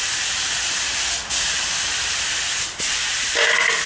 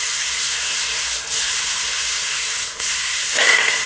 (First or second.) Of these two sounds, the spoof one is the second